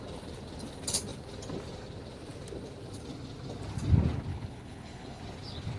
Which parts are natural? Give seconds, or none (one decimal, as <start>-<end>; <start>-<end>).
0.0-4.3; 5.2-5.8